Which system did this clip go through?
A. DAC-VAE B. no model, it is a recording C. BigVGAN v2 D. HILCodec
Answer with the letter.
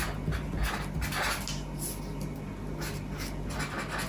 B